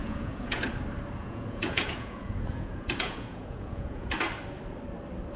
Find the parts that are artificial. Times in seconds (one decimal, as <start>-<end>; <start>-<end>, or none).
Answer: 0.0-0.6; 1.2-4.1